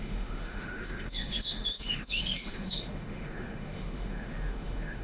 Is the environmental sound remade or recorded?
remade